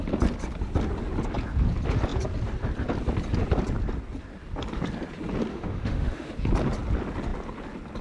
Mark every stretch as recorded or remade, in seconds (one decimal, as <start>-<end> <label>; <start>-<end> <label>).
0.0-5.5 recorded; 5.5-6.3 remade; 6.3-8.0 recorded